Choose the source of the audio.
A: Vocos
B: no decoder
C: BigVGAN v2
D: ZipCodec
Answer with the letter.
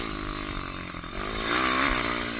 B